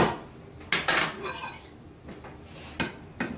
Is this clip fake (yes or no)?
no